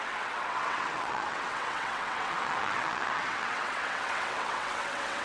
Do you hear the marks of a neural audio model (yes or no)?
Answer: yes